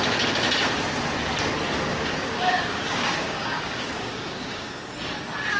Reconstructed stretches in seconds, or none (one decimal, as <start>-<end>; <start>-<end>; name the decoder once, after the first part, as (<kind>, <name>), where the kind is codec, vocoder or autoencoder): 1.9-4.9 (codec, DAC)